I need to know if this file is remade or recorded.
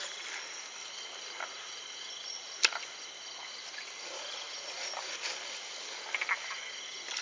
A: recorded